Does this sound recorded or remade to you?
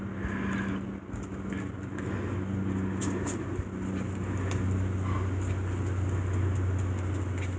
recorded